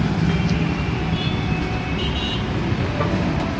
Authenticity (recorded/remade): recorded